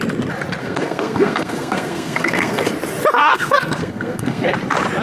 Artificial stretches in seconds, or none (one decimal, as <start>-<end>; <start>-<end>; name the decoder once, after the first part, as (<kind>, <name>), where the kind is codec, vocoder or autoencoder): 0.6-2.7 (codec, SNAC); 3.2-4.5